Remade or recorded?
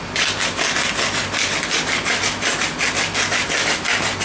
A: recorded